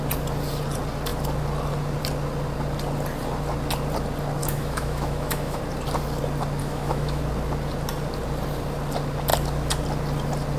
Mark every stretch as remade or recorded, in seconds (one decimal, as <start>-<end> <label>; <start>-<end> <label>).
0.0-4.4 recorded; 4.4-5.6 remade; 5.6-6.6 recorded; 6.6-7.2 remade; 7.2-10.6 recorded